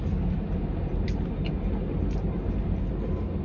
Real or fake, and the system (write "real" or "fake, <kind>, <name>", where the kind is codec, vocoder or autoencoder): real